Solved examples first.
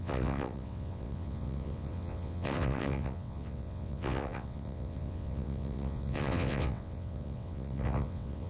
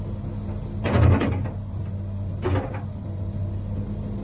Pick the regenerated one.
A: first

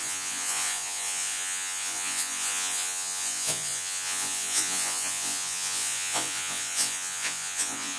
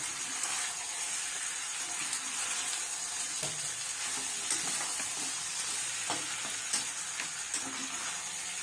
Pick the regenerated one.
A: first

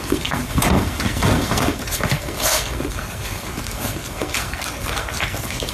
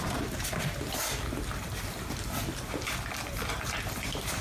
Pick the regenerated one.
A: first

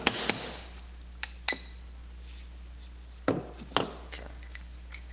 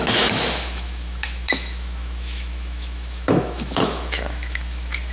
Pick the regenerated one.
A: second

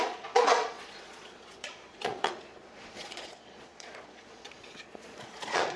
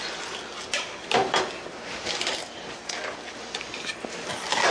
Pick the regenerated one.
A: first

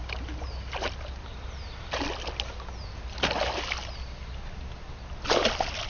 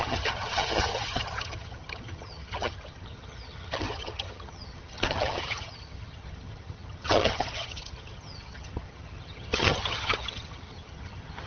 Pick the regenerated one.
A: second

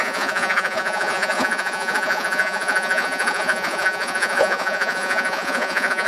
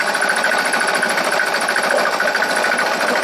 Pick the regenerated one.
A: first